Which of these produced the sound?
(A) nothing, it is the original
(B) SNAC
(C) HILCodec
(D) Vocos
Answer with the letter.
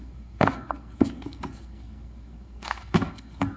B